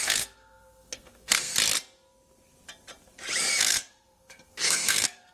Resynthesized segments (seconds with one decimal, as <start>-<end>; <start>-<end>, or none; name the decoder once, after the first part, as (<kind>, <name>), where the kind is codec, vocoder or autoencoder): 0.0-1.5 (codec, SNAC); 3.6-5.3